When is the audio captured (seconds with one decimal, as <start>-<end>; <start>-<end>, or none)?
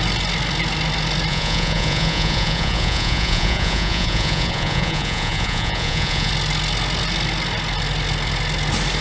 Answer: 0.0-1.3; 6.3-9.0